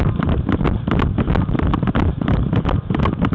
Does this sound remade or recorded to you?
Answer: recorded